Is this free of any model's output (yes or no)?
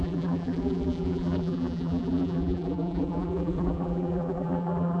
no